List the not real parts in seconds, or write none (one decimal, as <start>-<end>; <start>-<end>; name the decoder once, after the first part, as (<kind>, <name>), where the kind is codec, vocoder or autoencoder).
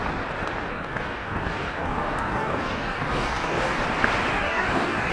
0.7-3.8 (codec, DAC); 4.3-5.1